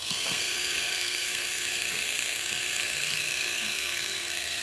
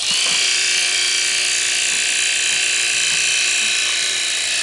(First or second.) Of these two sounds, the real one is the second